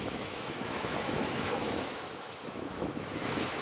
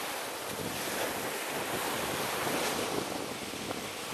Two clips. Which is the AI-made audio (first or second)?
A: first